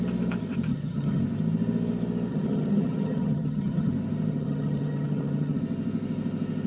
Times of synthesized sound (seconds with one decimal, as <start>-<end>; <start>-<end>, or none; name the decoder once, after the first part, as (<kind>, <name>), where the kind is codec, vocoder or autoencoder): 0.7-1.2 (vocoder, HiFi-GAN); 2.3-3.9; 4.3-5.6